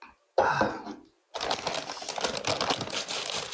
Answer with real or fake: real